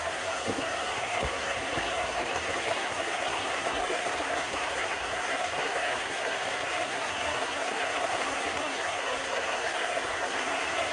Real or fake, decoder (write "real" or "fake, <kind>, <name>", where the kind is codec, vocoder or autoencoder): fake, codec, SNAC